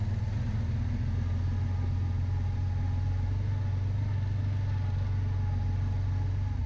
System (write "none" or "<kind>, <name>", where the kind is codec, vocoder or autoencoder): none